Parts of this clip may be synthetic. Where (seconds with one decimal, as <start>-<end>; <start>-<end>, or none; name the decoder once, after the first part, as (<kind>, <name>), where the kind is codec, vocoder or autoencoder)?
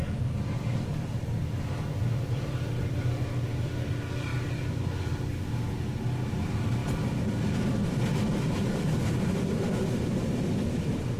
0.0-4.3 (vocoder, BigVGAN v2); 6.3-6.8; 7.4-11.2